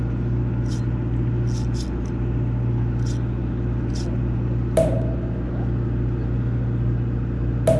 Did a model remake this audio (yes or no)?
no